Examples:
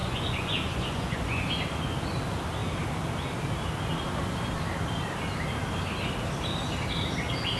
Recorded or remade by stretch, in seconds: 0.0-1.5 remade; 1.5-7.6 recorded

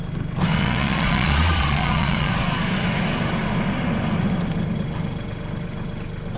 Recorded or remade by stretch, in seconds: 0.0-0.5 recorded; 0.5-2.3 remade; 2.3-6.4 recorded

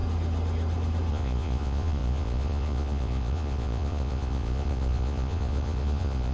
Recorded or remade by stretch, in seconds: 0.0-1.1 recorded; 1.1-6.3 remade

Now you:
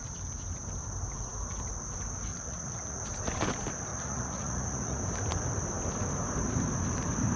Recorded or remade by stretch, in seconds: 0.0-2.3 recorded; 2.3-3.0 remade; 3.0-3.9 recorded; 3.9-5.0 remade; 5.0-7.4 recorded

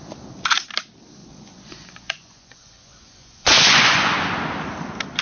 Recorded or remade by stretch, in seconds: 0.0-1.2 recorded; 1.2-4.3 remade; 4.3-5.2 recorded

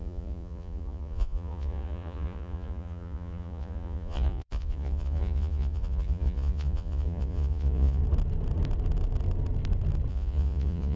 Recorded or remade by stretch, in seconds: 0.0-8.0 remade; 8.0-10.1 recorded; 10.1-11.0 remade

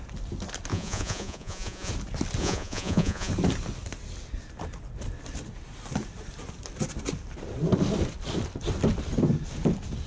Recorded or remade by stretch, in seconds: 0.0-0.7 recorded; 0.7-1.9 remade; 1.9-2.4 recorded; 2.4-3.3 remade; 3.3-10.1 recorded